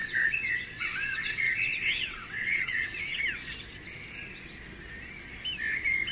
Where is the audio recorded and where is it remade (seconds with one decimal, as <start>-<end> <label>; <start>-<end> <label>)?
0.0-3.2 remade; 3.2-6.1 recorded